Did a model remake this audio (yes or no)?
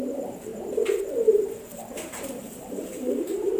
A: yes